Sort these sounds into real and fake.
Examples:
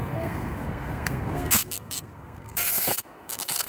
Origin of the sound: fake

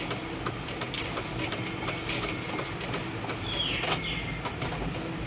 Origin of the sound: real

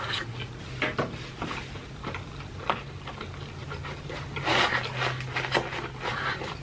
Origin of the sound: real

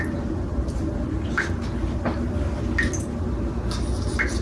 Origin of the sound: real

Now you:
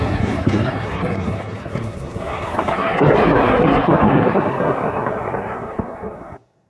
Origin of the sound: fake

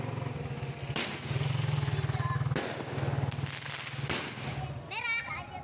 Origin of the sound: real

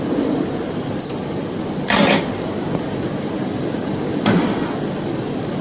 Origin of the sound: real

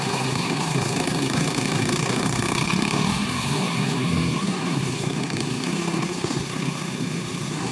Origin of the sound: fake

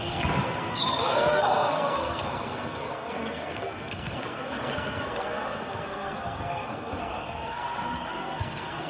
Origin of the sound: fake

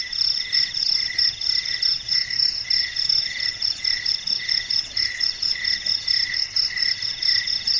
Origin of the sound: real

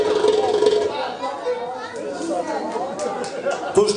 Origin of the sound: real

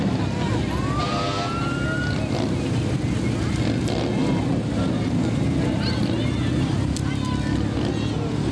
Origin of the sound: real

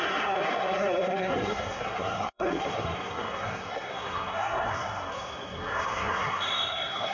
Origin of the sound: fake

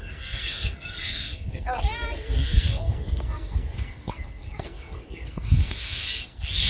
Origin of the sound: fake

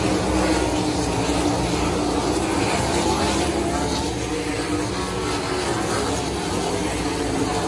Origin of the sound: real